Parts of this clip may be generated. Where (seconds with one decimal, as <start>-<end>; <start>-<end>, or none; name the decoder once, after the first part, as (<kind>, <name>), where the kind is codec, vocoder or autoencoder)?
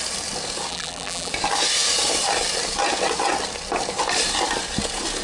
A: 0.7-1.3 (vocoder, BigVGAN v2)